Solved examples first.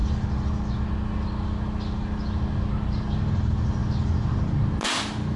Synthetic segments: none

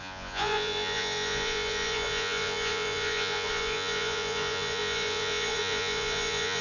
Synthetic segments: 0.0-6.6 (vocoder, Vocos)

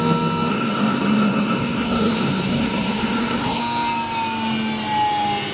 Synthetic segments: 0.5-3.6 (codec, SNAC)

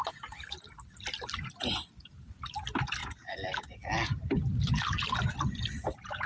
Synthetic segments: none